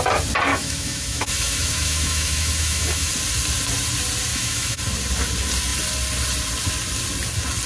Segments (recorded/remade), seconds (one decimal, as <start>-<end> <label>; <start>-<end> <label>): 0.0-0.5 recorded; 0.5-3.1 remade; 3.1-4.3 recorded; 4.3-4.8 remade; 4.8-7.7 recorded